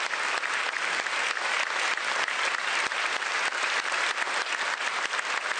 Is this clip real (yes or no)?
yes